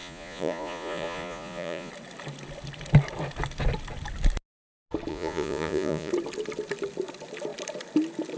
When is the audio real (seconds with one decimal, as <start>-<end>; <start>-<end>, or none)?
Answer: 1.9-5.1; 6.1-8.4